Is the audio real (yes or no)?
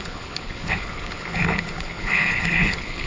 no